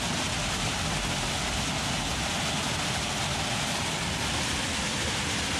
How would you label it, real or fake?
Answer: real